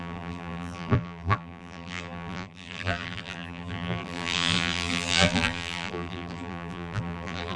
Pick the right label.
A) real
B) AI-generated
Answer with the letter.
B